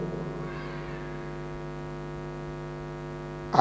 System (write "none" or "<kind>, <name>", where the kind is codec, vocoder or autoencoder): none